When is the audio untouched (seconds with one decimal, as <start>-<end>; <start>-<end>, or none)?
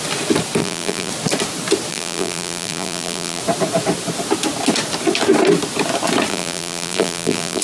0.0-0.6; 1.1-1.9; 3.4-6.3